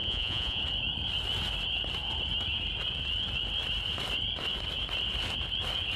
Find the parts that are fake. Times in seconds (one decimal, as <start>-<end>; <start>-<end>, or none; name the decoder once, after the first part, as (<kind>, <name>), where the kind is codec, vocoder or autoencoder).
0.0-0.6 (vocoder, Vocos)